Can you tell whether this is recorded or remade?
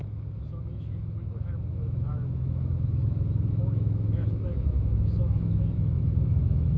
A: remade